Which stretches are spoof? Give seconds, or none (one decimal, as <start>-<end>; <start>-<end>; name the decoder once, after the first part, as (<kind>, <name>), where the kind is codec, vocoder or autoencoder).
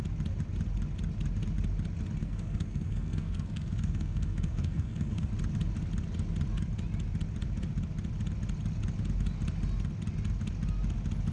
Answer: 2.2-5.3 (codec, SNAC)